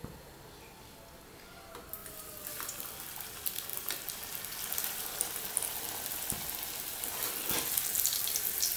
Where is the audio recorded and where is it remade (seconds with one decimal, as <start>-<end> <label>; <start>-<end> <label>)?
0.0-8.8 recorded